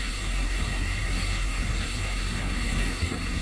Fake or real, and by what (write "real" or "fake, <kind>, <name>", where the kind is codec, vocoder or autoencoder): fake, codec, SNAC